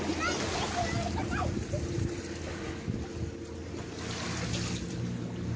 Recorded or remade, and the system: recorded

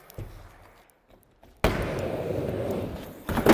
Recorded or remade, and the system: recorded